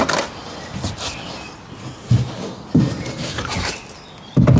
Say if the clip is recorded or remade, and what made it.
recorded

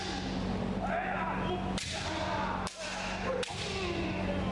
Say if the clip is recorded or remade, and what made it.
recorded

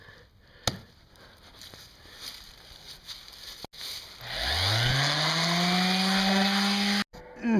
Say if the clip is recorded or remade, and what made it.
recorded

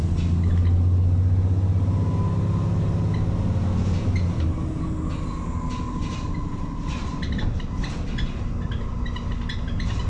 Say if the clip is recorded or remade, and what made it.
recorded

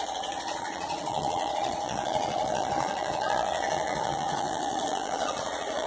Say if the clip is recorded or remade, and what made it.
remade, vocoder, Vocos